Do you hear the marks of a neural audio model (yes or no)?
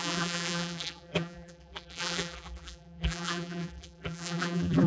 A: yes